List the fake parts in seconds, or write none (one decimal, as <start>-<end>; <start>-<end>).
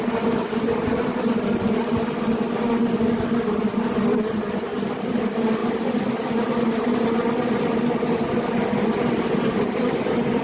none